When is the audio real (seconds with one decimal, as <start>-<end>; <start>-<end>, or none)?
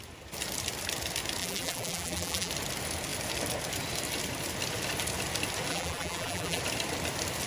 0.0-1.4; 2.5-5.7; 6.6-7.5